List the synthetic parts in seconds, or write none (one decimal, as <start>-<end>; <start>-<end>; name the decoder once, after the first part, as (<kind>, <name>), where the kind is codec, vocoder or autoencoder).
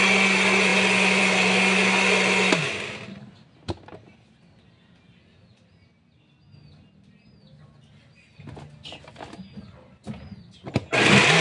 none